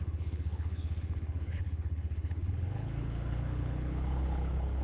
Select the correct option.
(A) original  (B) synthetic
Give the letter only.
B